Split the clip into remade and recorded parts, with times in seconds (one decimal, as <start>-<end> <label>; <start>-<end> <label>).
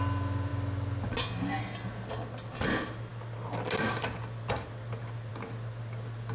0.0-6.3 recorded